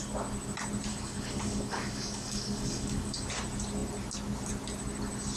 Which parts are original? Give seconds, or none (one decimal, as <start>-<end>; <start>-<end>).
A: 0.0-0.9; 3.3-5.4